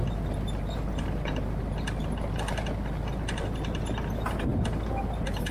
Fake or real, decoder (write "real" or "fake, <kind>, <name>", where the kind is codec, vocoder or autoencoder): real